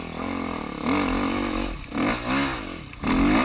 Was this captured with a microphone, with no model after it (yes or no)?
yes